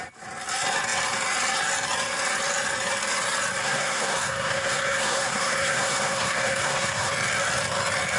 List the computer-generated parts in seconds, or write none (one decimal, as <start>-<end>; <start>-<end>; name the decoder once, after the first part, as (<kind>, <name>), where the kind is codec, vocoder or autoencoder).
3.6-7.1 (codec, SNAC)